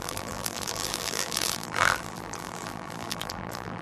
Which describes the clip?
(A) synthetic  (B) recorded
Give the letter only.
A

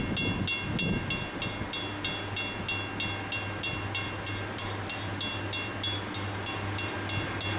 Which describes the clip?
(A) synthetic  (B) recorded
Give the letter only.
B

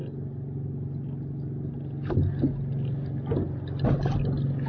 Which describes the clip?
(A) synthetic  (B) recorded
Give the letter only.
B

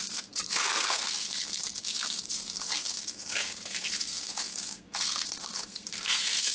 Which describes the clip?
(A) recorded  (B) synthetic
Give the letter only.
B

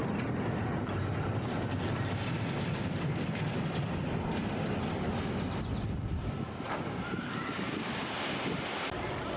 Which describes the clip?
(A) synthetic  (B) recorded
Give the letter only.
B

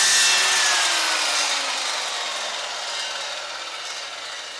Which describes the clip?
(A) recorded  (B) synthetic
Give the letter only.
A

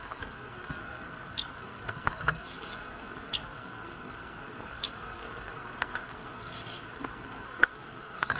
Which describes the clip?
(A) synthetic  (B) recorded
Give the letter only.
A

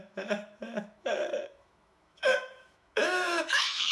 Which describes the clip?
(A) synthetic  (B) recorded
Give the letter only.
A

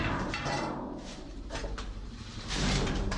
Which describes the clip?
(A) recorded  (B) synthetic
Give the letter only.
B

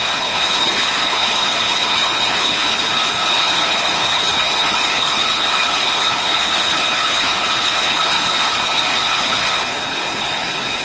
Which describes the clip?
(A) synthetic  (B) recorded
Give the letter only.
A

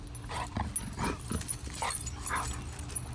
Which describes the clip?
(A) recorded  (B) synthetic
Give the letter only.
A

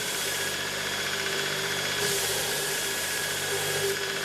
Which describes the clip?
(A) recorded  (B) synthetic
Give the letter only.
B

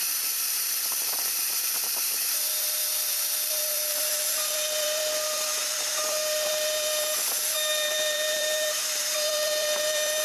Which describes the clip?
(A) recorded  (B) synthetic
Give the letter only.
B